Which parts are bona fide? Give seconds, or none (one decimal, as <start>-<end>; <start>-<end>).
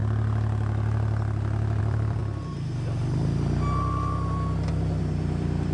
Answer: 0.0-1.8; 2.2-4.7